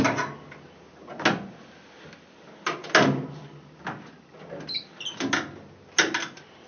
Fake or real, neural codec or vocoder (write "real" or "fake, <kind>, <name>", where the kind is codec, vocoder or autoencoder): real